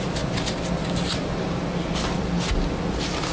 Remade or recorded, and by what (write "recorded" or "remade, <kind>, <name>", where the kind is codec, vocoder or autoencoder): recorded